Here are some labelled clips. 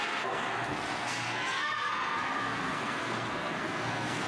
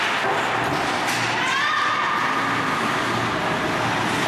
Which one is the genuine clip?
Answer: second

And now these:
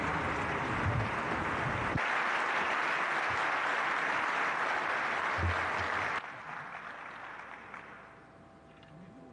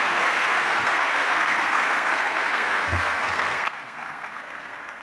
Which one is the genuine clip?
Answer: first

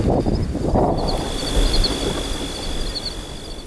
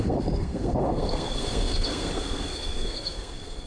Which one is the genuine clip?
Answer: first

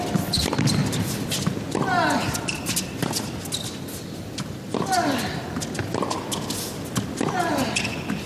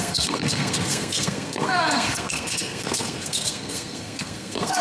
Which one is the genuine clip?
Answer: first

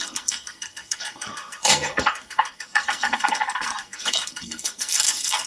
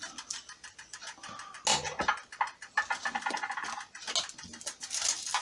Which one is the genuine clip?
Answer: second